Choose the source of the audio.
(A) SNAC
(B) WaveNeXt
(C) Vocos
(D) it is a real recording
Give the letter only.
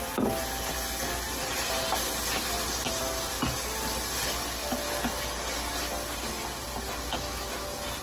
D